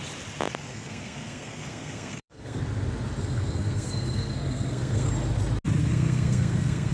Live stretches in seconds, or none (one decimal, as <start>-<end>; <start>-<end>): 0.0-0.7; 2.6-3.2; 5.1-5.8